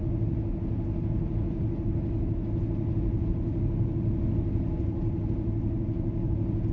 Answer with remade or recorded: recorded